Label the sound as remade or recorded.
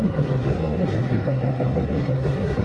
remade